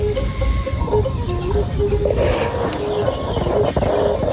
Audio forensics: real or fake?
real